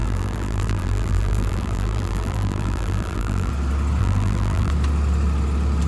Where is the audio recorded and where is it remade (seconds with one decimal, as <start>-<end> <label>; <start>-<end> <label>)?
0.0-3.5 remade; 3.5-4.0 recorded; 4.0-4.7 remade; 4.7-5.9 recorded